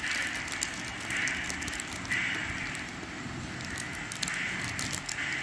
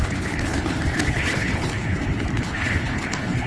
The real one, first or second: first